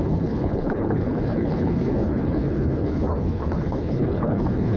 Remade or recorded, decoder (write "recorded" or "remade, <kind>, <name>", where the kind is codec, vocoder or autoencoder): remade, codec, HILCodec